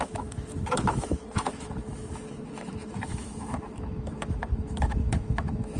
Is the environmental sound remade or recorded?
remade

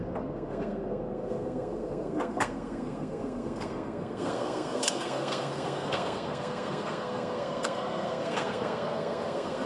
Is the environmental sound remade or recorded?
remade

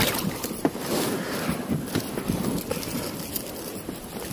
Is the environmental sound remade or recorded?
recorded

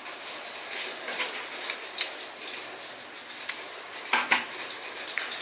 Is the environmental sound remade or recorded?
recorded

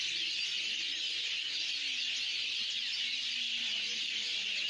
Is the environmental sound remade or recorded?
recorded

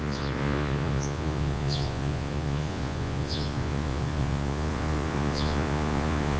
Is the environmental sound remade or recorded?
remade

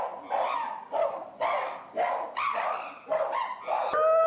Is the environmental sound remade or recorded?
recorded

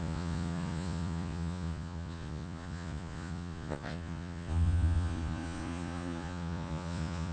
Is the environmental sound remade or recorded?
remade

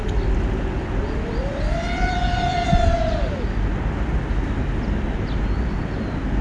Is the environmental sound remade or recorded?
recorded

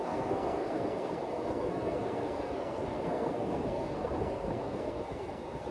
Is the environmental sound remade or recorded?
remade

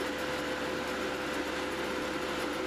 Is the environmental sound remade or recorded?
recorded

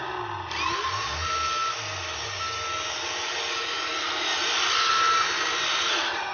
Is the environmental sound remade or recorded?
recorded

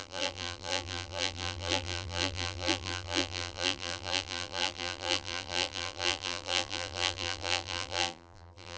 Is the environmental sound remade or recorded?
remade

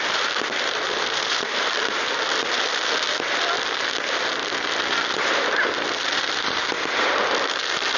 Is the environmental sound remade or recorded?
remade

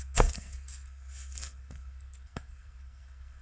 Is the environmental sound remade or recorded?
remade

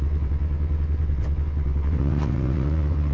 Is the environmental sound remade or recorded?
remade